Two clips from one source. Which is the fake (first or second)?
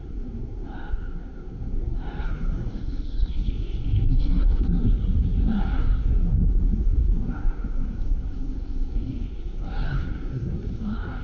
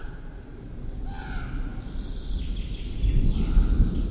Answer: first